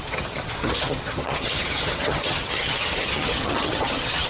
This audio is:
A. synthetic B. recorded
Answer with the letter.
A